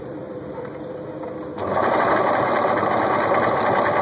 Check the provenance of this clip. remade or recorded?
recorded